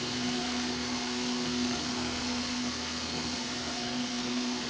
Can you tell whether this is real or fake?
fake